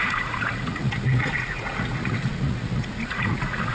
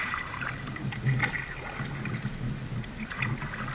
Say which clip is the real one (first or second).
second